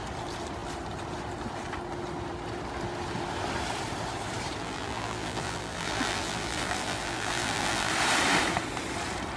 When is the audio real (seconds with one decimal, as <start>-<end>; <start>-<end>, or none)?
0.0-4.6; 7.9-9.4